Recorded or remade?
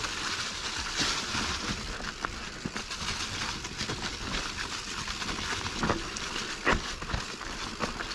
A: recorded